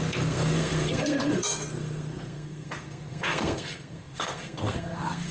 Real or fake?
fake